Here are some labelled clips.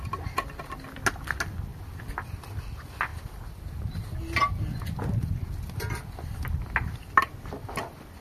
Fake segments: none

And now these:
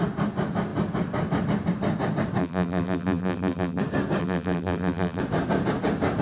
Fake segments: 2.4-3.8; 4.2-5.2

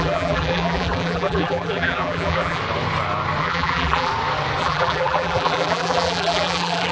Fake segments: 0.0-2.6; 3.4-4.1; 4.6-6.9